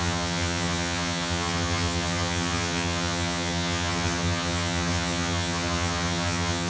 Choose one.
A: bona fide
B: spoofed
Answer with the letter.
B